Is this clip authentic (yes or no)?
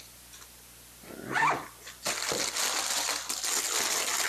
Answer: yes